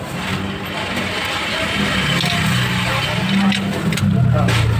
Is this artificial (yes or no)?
no